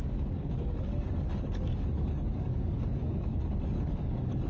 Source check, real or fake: fake